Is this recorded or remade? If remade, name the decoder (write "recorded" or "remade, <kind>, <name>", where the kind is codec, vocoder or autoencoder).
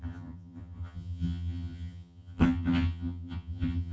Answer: remade, vocoder, HiFi-GAN